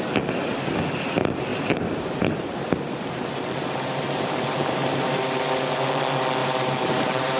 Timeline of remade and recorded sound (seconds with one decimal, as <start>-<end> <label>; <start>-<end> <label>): 0.0-1.5 recorded; 1.5-5.9 remade; 5.9-6.4 recorded; 6.4-7.4 remade